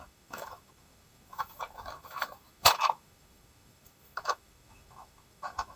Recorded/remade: remade